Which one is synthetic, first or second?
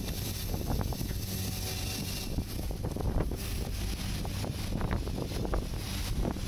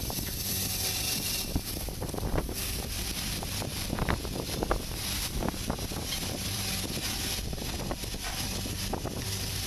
second